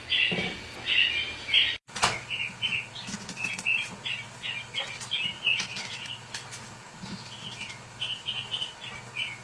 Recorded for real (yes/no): yes